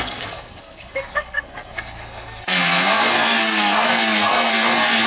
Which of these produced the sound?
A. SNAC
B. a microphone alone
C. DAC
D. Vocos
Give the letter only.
A